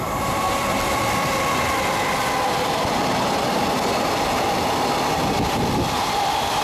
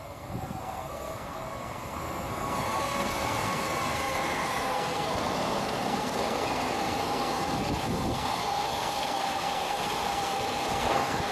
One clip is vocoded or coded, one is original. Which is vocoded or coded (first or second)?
second